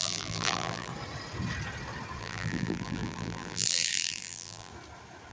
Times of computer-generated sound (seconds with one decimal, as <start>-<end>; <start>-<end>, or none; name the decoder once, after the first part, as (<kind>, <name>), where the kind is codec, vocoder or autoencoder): 0.0-0.9 (vocoder, BigVGAN v2); 2.2-4.7